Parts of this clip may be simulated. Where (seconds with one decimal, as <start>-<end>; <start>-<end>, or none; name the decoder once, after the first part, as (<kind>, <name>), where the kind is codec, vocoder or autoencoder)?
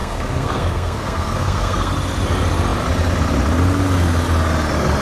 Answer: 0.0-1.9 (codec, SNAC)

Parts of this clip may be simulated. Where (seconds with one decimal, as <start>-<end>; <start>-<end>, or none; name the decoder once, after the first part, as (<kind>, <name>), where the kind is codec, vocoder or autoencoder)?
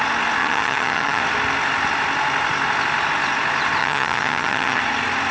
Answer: 0.4-1.2 (vocoder, HiFi-GAN); 3.8-4.8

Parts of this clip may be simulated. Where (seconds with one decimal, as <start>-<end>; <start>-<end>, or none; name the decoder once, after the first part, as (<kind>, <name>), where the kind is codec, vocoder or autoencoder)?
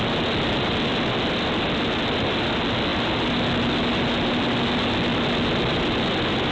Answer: 2.9-4.4 (vocoder, BigVGAN v2)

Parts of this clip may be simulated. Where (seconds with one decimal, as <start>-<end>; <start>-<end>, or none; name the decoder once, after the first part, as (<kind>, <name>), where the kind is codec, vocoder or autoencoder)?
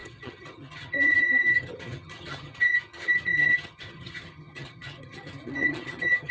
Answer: 0.0-6.3 (vocoder, HiFi-GAN)